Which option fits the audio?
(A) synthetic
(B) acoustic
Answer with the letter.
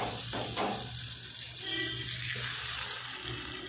B